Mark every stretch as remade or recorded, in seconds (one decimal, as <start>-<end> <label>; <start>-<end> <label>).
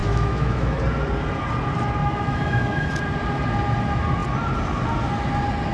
0.0-0.8 remade; 0.8-2.0 recorded; 2.0-3.0 remade; 3.0-5.7 recorded